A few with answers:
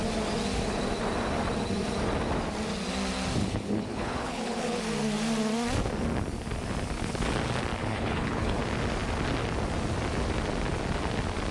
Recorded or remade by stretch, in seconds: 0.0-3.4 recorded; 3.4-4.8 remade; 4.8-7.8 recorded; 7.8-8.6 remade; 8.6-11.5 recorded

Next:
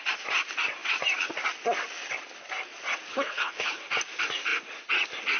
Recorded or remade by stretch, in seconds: 0.0-3.1 recorded; 3.1-3.8 remade; 3.8-5.4 recorded

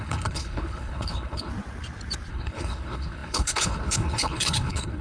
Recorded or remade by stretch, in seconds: 0.0-1.5 remade; 1.5-2.3 recorded; 2.3-5.0 remade

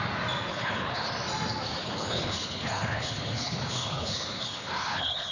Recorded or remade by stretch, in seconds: 0.0-0.5 recorded; 0.5-1.1 remade; 1.1-1.8 recorded; 1.8-5.3 remade

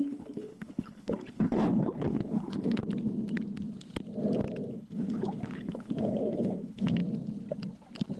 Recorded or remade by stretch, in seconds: 0.0-2.8 remade; 2.8-4.7 recorded; 4.7-7.0 remade; 7.0-8.2 recorded

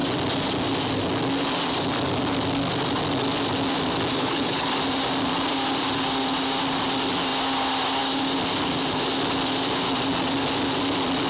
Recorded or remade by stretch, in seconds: 0.0-4.2 recorded; 4.2-4.7 remade; 4.7-11.3 recorded

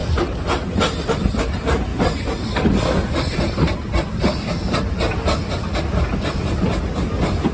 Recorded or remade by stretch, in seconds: 0.0-7.5 recorded